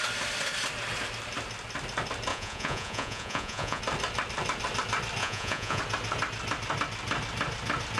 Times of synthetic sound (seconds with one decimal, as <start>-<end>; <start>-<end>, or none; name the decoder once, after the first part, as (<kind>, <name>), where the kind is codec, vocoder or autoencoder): 2.3-3.8 (vocoder, Vocos); 5.2-5.8